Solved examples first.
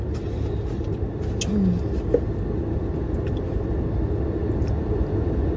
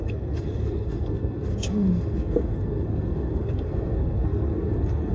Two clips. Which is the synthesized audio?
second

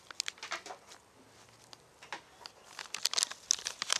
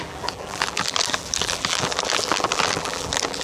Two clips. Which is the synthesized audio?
second